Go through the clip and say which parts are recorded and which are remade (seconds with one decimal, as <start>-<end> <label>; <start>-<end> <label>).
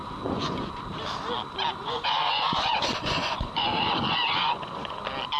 0.0-0.8 remade; 0.8-1.8 recorded; 1.8-5.0 remade; 5.0-5.4 recorded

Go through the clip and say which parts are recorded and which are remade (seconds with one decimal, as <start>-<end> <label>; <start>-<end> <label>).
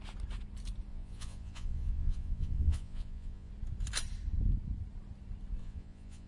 0.0-0.9 recorded; 0.9-3.5 remade; 3.5-5.6 recorded; 5.6-6.3 remade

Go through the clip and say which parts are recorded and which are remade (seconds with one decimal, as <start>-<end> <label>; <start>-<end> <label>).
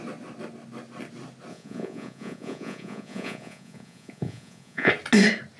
0.0-1.5 recorded; 1.5-4.9 remade; 4.9-5.6 recorded